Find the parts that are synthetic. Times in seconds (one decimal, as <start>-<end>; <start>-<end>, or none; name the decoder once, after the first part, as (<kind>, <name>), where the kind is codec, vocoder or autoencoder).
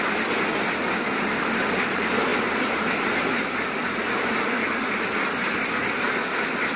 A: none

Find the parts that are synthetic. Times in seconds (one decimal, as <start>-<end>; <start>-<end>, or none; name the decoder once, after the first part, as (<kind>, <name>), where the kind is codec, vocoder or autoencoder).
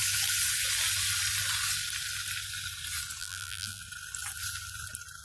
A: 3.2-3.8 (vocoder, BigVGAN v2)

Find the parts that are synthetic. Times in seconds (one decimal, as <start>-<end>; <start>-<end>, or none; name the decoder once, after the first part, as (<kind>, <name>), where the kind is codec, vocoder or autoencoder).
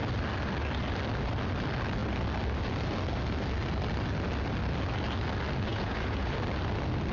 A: 5.7-6.3 (vocoder, Vocos)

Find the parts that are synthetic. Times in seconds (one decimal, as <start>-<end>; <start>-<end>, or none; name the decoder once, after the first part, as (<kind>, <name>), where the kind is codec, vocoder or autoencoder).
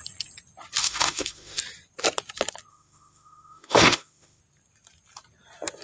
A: 0.8-1.6 (autoencoder, DAC-VAE); 2.7-4.4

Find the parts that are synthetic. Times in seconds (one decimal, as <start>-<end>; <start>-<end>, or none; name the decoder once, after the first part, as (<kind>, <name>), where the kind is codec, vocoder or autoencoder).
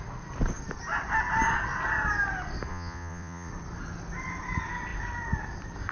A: 2.7-3.5 (vocoder, Vocos)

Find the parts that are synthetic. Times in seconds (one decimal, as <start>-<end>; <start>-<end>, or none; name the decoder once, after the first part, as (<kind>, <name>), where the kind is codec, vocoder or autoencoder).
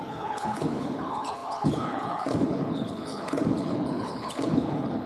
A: 0.0-5.1 (codec, HILCodec)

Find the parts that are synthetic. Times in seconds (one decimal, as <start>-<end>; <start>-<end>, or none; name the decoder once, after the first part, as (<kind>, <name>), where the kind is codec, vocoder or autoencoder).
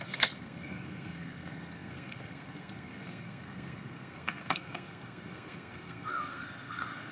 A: 0.0-7.1 (codec, SNAC)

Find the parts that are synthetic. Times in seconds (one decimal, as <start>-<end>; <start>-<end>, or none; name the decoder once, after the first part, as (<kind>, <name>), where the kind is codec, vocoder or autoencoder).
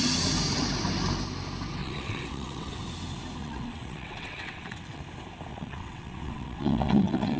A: 1.8-2.8 (vocoder, WaveNeXt); 3.4-5.0; 5.5-7.4